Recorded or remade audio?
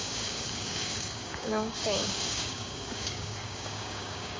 remade